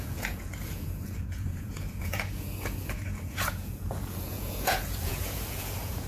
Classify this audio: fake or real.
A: fake